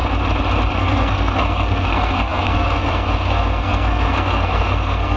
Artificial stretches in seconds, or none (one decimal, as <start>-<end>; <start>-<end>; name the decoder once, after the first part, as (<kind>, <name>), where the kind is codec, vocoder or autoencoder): 0.7-5.2 (codec, SNAC)